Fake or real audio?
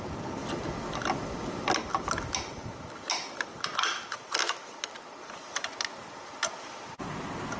real